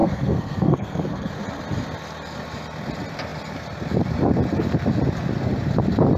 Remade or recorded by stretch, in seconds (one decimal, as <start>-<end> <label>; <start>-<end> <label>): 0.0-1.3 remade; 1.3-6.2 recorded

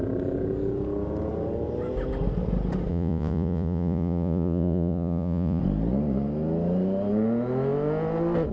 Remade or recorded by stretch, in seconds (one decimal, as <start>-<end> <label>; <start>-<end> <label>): 0.0-2.9 recorded; 2.9-5.6 remade; 5.6-8.5 recorded

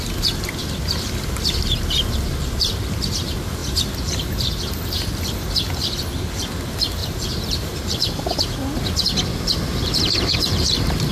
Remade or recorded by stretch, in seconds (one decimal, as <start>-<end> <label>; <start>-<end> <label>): 0.0-7.0 recorded; 7.0-8.3 remade; 8.3-9.3 recorded; 9.3-11.1 remade

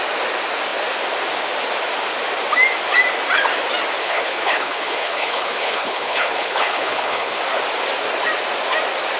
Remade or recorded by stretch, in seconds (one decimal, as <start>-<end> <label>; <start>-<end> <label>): 0.0-4.0 recorded; 4.0-7.4 remade; 7.4-9.2 recorded

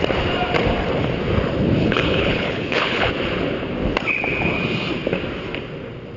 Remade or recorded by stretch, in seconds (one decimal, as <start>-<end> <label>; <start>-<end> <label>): 0.0-1.8 recorded; 1.8-3.1 remade; 3.1-6.2 recorded

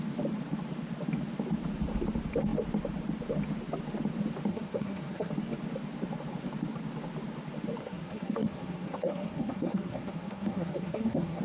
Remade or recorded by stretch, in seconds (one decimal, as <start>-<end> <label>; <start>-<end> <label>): 0.0-4.5 recorded; 4.5-5.3 remade; 5.3-7.8 recorded; 7.8-11.4 remade

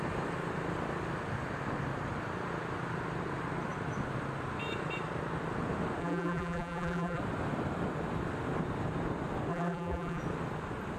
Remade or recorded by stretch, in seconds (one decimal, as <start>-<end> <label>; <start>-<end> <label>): 0.0-6.0 recorded; 6.0-7.2 remade; 7.2-9.5 recorded; 9.5-10.2 remade; 10.2-11.0 recorded